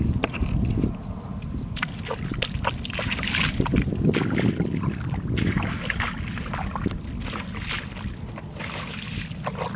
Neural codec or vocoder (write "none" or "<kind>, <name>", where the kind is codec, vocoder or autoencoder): none